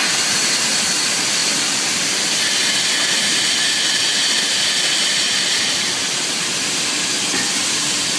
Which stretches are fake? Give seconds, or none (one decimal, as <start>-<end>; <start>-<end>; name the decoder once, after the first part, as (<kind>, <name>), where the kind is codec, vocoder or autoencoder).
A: 1.4-6.3 (vocoder, BigVGAN v2)